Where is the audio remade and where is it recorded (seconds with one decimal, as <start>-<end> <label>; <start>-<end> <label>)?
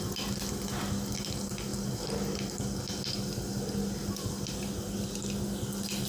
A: 0.0-6.1 recorded